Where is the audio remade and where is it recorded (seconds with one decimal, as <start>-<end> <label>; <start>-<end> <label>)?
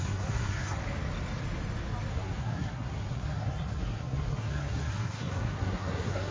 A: 0.0-0.8 remade; 0.8-2.1 recorded; 2.1-6.3 remade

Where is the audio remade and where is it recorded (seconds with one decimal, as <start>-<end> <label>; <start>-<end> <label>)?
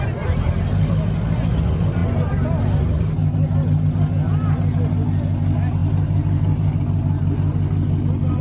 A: 0.0-8.4 recorded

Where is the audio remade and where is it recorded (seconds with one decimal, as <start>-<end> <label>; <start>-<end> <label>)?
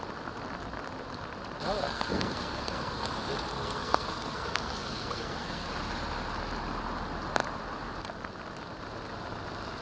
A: 0.0-1.8 recorded; 1.8-3.1 remade; 3.1-3.5 recorded; 3.5-5.7 remade; 5.7-9.8 recorded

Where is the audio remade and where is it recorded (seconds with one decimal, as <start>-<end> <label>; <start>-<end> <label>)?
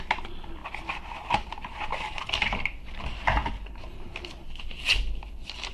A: 0.0-5.7 recorded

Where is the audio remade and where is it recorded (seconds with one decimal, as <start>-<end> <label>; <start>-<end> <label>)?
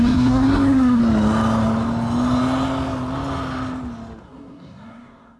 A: 0.0-1.0 remade; 1.0-4.2 recorded; 4.2-5.4 remade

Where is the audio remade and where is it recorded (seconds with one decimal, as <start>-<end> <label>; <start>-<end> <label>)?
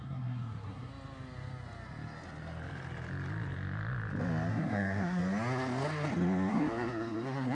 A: 0.0-0.9 remade; 0.9-4.5 recorded; 4.5-5.2 remade; 5.2-6.5 recorded; 6.5-7.5 remade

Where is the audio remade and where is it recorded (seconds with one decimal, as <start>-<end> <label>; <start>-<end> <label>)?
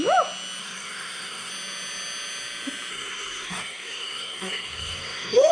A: 0.0-0.6 recorded; 0.6-1.5 remade; 1.5-2.9 recorded; 2.9-5.5 remade